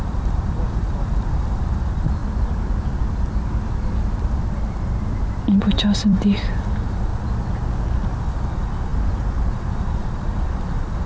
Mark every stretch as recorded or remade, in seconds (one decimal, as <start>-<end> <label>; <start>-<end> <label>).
0.0-2.2 remade; 2.2-5.6 recorded; 5.6-7.1 remade; 7.1-8.2 recorded; 8.2-8.9 remade; 8.9-9.5 recorded; 9.5-11.1 remade